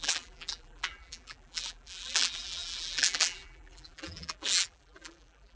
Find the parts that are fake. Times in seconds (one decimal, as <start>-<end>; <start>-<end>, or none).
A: 0.0-5.6